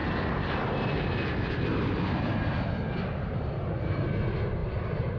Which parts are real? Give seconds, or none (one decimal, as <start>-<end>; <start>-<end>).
0.0-5.2